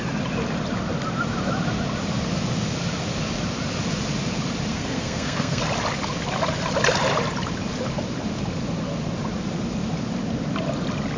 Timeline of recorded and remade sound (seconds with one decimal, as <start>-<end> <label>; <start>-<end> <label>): 0.0-4.7 recorded; 4.7-5.6 remade; 5.6-11.2 recorded